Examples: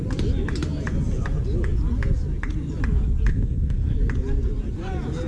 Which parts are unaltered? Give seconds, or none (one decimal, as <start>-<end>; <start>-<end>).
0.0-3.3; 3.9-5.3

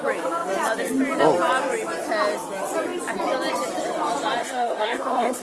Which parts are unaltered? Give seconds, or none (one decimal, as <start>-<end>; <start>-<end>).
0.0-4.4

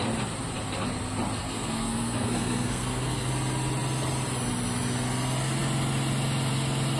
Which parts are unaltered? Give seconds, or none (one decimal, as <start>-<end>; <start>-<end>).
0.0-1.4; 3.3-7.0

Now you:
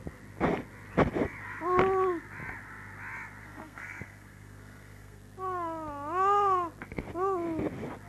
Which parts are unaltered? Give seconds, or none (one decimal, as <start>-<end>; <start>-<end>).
0.0-3.4; 5.2-8.1

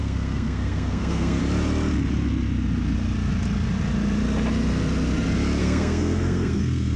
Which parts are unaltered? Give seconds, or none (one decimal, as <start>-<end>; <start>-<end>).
1.4-5.6

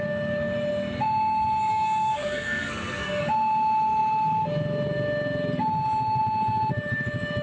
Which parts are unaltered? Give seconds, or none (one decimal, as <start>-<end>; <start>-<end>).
0.0-1.7; 3.2-7.4

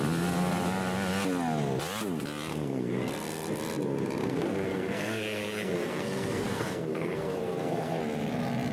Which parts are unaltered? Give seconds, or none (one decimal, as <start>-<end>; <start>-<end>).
0.0-2.5; 3.5-4.2; 8.0-8.7